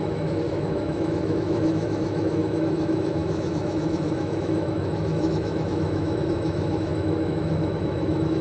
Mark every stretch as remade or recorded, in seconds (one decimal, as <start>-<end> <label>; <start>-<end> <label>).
0.0-8.4 remade